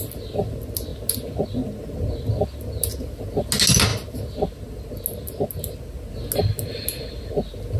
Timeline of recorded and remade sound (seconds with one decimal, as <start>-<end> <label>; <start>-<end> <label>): 0.0-7.8 recorded